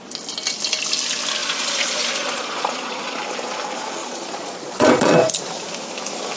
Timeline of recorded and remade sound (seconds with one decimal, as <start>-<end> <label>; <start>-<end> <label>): 0.0-1.4 recorded; 1.4-3.2 remade; 3.2-4.0 recorded; 4.0-5.3 remade; 5.3-6.4 recorded